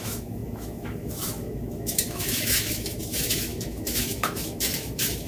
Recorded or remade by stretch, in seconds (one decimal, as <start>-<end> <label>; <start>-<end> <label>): 0.0-5.3 remade